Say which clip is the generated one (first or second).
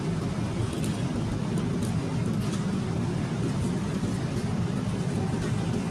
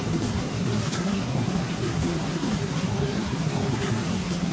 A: second